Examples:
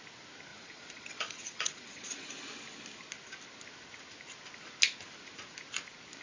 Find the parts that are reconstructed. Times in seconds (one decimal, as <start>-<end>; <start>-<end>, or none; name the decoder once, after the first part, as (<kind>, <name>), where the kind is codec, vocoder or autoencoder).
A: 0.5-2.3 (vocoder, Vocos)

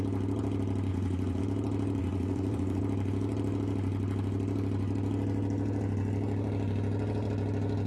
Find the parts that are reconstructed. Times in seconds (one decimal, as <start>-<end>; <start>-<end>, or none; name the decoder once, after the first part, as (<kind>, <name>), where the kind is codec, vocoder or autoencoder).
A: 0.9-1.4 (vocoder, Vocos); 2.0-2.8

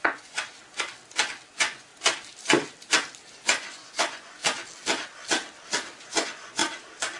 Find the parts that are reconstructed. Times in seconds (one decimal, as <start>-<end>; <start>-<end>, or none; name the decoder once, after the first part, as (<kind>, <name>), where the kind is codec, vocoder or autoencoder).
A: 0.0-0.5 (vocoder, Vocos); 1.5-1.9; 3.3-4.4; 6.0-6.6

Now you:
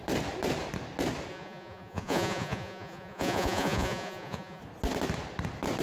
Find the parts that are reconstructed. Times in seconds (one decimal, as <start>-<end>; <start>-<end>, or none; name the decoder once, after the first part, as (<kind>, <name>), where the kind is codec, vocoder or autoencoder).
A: 1.3-4.6 (vocoder, Vocos)

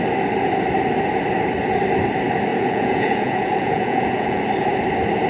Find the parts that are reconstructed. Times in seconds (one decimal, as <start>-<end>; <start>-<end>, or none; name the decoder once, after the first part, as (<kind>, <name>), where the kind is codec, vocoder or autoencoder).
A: 2.5-4.4 (vocoder, Vocos)

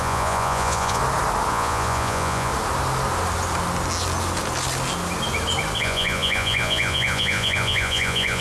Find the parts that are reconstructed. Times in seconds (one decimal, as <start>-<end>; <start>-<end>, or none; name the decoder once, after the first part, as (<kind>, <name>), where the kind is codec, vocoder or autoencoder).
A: 0.0-1.0 (vocoder, Vocos); 1.5-2.5; 5.8-8.4